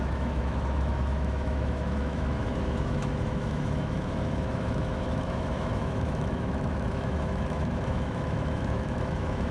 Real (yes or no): no